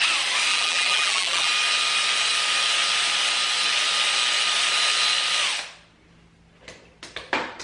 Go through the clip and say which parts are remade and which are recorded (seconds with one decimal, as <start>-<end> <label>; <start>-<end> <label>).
0.0-0.5 recorded; 0.5-1.5 remade; 1.5-7.6 recorded